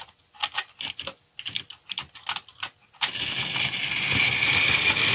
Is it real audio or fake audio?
real